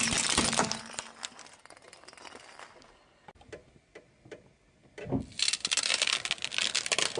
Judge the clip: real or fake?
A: real